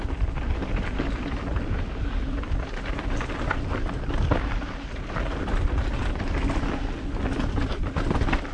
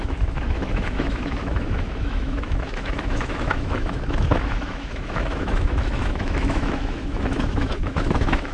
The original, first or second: first